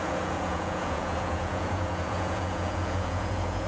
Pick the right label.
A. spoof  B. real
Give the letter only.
A